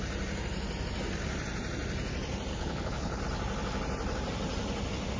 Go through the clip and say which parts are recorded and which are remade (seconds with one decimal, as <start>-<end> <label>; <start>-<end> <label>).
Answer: 0.0-2.5 recorded; 2.5-3.2 remade; 3.2-5.2 recorded